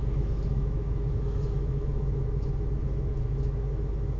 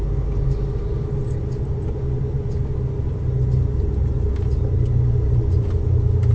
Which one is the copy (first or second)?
first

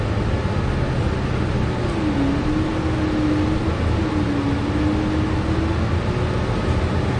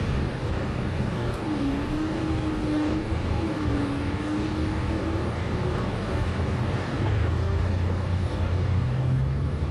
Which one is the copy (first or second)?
second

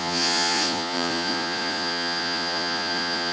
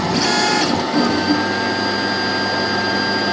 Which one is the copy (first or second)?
first